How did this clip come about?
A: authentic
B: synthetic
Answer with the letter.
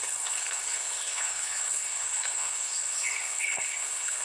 B